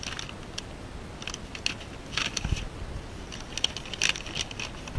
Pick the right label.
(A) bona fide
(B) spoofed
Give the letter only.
A